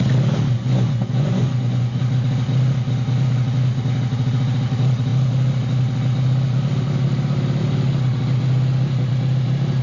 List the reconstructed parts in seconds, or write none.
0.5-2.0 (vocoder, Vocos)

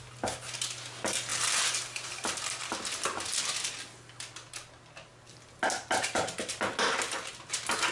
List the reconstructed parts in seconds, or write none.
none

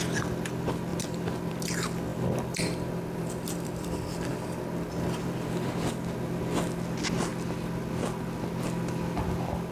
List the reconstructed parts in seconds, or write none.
0.9-1.5 (vocoder, BigVGAN v2); 2.1-5.9

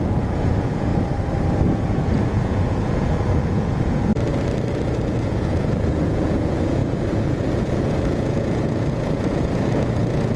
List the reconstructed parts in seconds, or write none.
0.0-0.9 (vocoder, Vocos); 1.7-4.1; 5.1-10.4

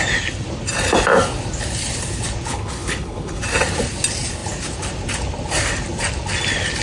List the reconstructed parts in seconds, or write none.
2.5-3.4 (codec, HILCodec)

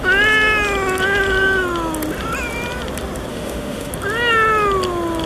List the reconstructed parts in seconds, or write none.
3.3-3.9 (autoencoder, DAC-VAE)

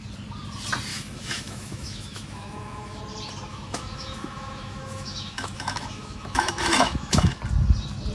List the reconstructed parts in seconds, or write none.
0.9-3.0 (autoencoder, DAC-VAE); 3.5-7.4